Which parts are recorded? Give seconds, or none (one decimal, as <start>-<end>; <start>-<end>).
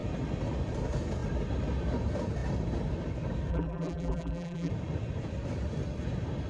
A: 0.0-3.5; 4.7-6.5